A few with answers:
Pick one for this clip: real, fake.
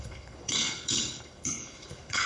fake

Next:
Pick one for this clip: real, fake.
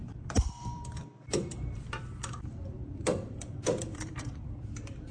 fake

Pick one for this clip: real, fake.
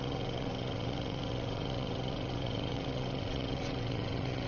fake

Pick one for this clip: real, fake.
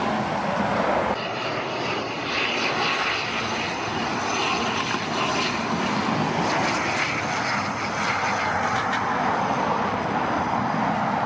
real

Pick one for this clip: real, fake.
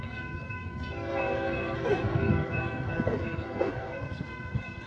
fake